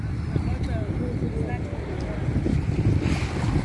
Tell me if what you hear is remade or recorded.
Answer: recorded